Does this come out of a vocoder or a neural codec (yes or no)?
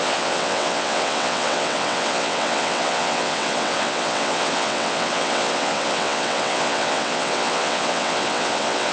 yes